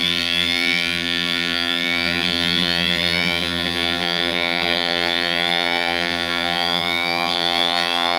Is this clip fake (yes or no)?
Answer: yes